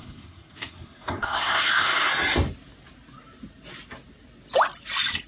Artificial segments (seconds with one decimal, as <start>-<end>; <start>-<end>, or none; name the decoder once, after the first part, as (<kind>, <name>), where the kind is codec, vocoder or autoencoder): 0.0-2.1 (codec, SNAC)